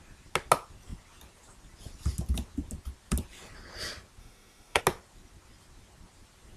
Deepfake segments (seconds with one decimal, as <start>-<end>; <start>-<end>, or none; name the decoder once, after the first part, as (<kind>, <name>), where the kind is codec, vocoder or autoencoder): 4.2-4.8 (autoencoder, DAC-VAE)